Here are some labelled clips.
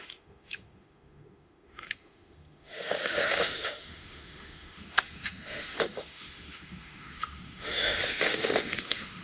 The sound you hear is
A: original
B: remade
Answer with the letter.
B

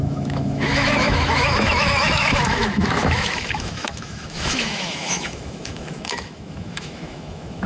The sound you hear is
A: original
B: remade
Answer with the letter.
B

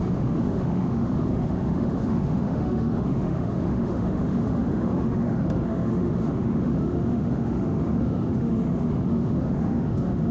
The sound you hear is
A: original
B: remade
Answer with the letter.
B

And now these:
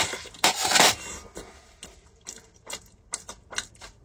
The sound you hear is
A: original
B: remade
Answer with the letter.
A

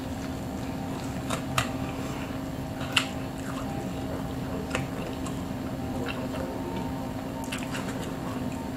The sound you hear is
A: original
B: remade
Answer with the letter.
A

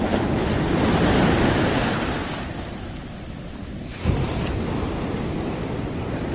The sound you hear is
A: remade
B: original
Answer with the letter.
B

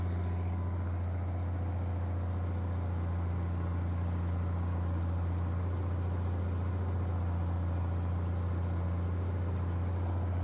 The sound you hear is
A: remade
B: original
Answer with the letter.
B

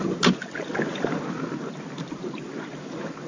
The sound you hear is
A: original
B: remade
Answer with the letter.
A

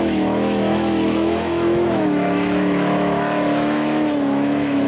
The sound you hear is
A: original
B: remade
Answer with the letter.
B